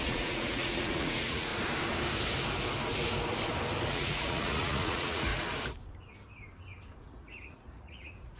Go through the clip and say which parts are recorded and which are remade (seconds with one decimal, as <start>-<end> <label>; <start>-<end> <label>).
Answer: 0.0-1.5 remade; 1.5-3.9 recorded; 3.9-5.3 remade; 5.3-7.0 recorded; 7.0-8.4 remade